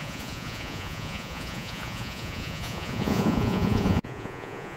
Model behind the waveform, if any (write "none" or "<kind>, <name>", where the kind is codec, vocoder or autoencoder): vocoder, Vocos